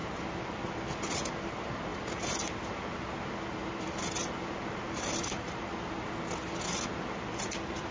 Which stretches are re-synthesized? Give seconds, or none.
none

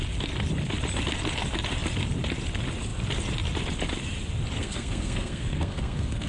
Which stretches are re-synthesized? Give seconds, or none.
4.6-6.3 (codec, SNAC)

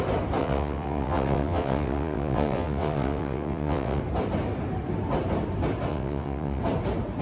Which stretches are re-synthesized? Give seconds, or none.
0.4-4.0 (vocoder, WaveNeXt); 5.9-6.6

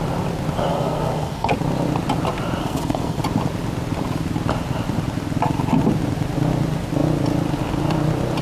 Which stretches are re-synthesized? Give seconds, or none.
0.7-1.5 (codec, SNAC); 2.6-3.2

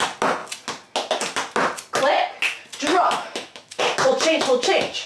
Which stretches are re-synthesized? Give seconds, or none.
2.9-3.8 (autoencoder, DAC-VAE)

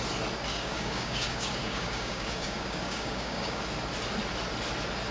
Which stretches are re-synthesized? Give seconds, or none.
0.5-3.6 (codec, DAC)

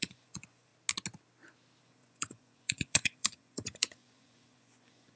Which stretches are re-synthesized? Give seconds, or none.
0.0-0.7 (vocoder, Vocos); 1.8-5.2

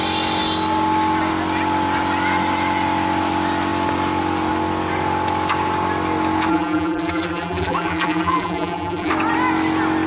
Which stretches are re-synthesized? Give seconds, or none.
6.5-9.1 (vocoder, BigVGAN v2)